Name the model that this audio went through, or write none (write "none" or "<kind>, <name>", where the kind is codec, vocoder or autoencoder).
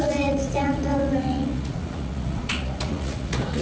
vocoder, Vocos